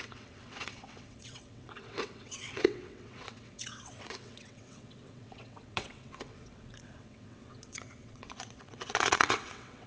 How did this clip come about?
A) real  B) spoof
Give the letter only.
B